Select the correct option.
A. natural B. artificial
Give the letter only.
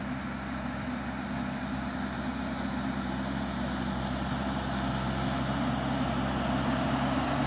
A